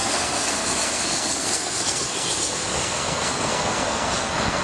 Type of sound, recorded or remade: remade